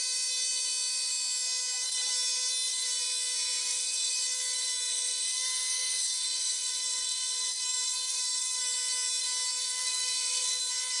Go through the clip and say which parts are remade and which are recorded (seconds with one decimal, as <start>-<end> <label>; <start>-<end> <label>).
0.0-3.6 recorded; 3.6-4.1 remade; 4.1-4.9 recorded; 4.9-8.6 remade; 8.6-9.5 recorded; 9.5-10.6 remade; 10.6-11.0 recorded